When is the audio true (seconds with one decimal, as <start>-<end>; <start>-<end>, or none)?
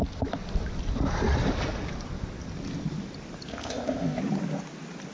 0.0-3.5; 4.2-5.1